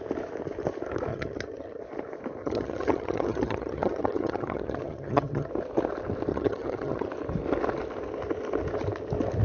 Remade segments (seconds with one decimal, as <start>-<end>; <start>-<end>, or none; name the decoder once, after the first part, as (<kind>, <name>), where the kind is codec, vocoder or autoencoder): 1.1-1.8 (vocoder, HiFi-GAN); 2.4-5.5; 6.3-7.1